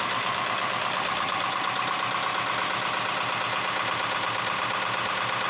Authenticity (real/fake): real